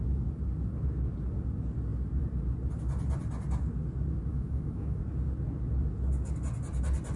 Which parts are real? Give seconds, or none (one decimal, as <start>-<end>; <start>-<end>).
0.0-4.3; 5.0-7.2